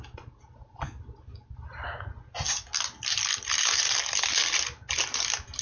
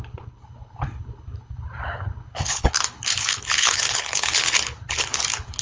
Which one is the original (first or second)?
first